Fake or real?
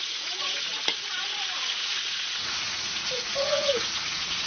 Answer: fake